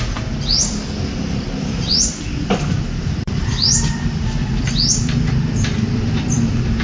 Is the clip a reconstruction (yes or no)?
yes